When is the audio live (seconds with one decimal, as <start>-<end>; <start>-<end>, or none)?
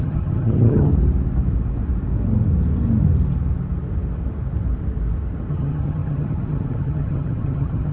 0.9-5.5